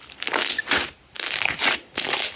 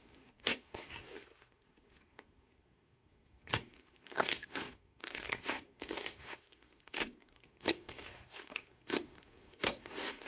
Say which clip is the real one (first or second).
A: first